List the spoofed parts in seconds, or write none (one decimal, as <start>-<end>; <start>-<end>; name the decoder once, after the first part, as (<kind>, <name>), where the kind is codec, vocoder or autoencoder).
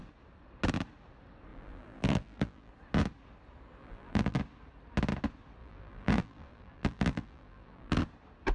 1.5-2.7 (vocoder, BigVGAN v2); 3.8-4.4; 5.6-8.0